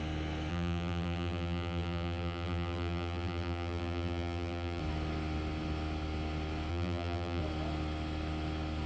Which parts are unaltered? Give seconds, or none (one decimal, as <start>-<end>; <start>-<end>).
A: 0.0-0.5; 4.8-6.7; 7.4-8.9